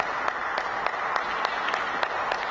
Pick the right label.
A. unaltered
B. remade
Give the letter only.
A